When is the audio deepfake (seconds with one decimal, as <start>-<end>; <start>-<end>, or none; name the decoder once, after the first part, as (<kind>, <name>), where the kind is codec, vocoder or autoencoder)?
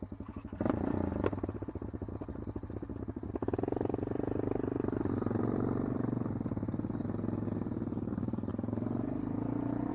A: none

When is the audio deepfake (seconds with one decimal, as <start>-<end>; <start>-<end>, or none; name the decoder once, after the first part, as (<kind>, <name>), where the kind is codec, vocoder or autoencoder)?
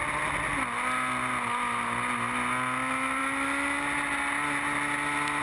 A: none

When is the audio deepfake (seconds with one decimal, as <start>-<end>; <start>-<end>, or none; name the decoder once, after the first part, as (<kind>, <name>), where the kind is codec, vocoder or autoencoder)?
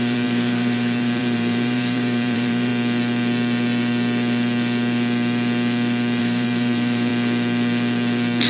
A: 0.0-2.7 (vocoder, BigVGAN v2); 6.2-7.1